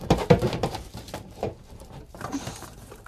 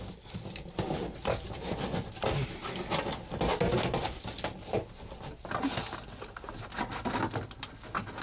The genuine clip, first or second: second